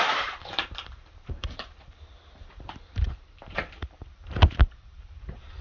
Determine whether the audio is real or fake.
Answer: fake